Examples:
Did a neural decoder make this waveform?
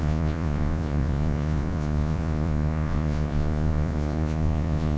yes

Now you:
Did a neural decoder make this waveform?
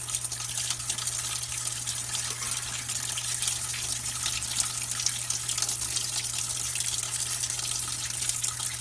no